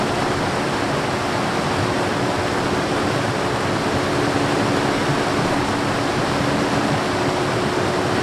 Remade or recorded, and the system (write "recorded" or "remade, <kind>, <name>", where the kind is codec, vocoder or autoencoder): recorded